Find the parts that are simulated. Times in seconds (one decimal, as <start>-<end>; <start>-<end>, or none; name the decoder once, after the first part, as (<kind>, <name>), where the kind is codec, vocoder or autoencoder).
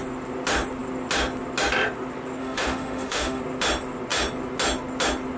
2.4-3.4 (autoencoder, DAC-VAE)